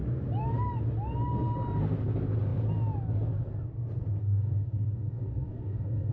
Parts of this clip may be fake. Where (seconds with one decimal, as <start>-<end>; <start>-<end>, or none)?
4.2-6.1